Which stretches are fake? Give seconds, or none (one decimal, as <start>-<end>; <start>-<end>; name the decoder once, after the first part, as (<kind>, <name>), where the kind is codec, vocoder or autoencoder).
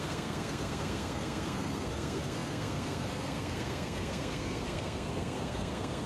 0.0-6.1 (codec, SNAC)